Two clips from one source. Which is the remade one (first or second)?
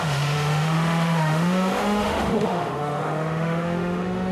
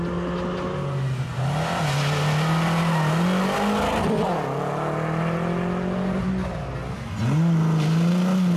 first